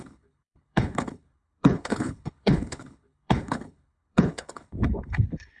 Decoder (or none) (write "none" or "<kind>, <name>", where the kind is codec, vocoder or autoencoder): codec, HILCodec